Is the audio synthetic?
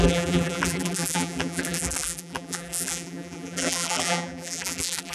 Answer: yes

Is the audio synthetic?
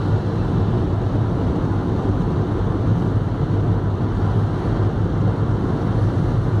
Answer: no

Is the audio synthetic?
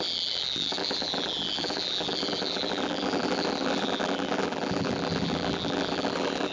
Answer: yes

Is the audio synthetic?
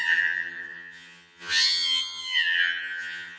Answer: yes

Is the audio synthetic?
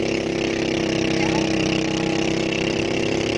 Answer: no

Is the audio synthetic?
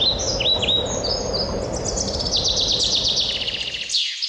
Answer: no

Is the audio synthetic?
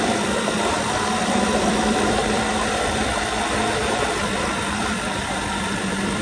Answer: yes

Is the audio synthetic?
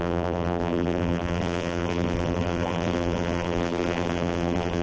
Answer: yes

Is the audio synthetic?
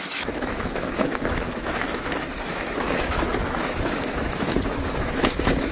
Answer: yes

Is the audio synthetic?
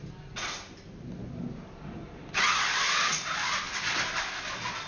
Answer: no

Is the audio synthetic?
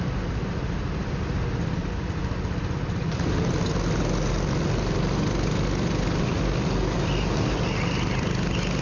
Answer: no